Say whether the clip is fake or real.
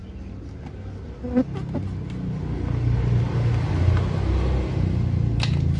real